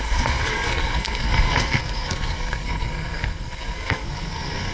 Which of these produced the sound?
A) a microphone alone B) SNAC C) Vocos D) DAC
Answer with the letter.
B